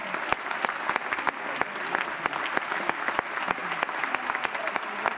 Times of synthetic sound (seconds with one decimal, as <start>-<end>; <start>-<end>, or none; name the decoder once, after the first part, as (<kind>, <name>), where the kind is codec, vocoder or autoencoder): none